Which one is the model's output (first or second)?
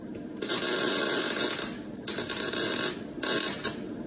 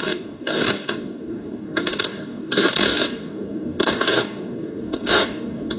second